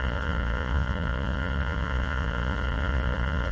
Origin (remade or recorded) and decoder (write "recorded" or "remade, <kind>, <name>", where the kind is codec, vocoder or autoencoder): remade, vocoder, Vocos